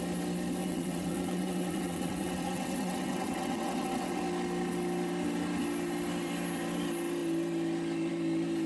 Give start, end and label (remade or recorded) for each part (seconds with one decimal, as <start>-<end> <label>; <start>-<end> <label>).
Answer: 0.0-0.6 recorded; 0.6-4.2 remade; 4.2-8.7 recorded